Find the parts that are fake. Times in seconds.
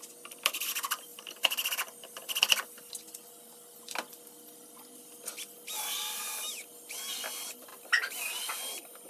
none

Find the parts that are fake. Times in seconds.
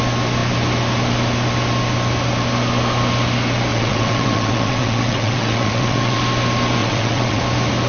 3.7-6.2; 6.8-7.4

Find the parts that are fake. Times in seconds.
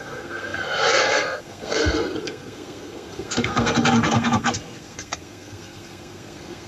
0.0-6.7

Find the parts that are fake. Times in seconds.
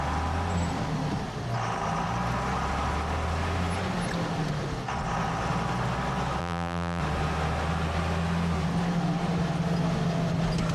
6.4-7.0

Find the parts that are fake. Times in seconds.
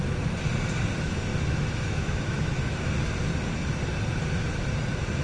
1.3-2.9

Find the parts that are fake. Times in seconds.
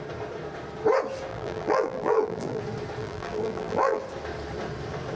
1.3-2.6; 3.0-4.0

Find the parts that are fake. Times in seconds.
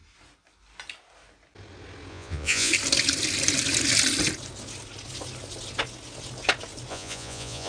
2.1-2.7; 6.9-7.7